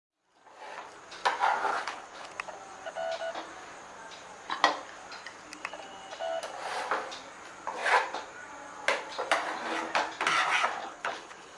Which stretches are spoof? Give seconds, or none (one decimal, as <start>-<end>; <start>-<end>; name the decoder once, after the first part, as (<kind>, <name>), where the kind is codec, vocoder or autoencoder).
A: 1.7-2.3 (codec, HILCodec); 10.8-11.6